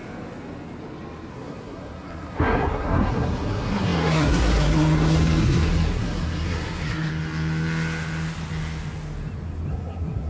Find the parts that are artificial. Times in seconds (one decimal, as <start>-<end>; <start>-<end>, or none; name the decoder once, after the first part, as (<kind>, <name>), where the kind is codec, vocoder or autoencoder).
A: 1.3-7.1 (codec, SNAC); 9.7-10.3